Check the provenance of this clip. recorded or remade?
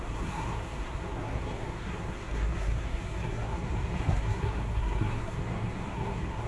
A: remade